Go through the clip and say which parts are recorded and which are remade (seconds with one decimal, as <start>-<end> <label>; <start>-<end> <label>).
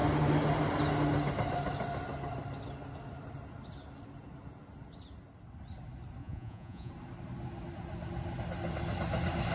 0.0-6.2 recorded; 6.2-6.9 remade; 6.9-9.5 recorded